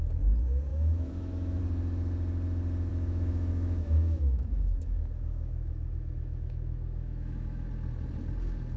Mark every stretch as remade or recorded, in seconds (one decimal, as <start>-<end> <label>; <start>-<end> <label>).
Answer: 0.0-0.7 recorded; 0.7-1.6 remade; 1.6-2.9 recorded; 2.9-7.7 remade; 7.7-8.8 recorded